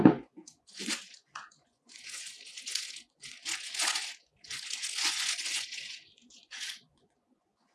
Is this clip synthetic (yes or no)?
yes